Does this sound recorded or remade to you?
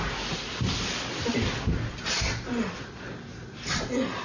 recorded